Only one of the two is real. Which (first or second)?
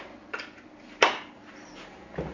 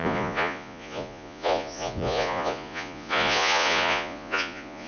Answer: first